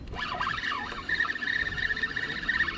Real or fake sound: real